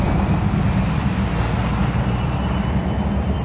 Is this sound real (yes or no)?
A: yes